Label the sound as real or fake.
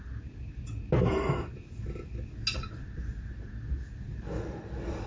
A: real